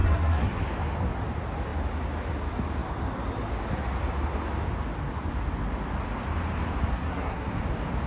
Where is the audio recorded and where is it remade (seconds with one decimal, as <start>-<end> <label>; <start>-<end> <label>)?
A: 0.0-0.6 remade; 0.6-6.9 recorded; 6.9-7.6 remade; 7.6-8.1 recorded